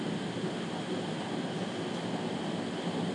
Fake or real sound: real